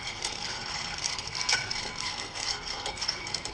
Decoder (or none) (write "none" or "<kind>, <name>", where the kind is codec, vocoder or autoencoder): codec, SNAC